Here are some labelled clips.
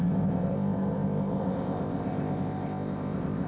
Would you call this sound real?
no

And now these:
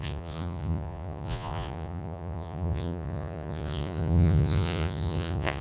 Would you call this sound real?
no